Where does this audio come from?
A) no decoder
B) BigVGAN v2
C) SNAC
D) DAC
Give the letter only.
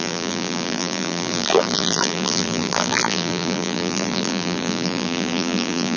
B